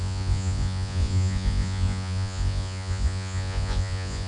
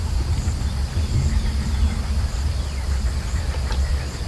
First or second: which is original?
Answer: second